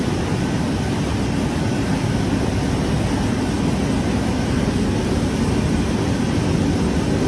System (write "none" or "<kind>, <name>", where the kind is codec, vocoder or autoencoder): none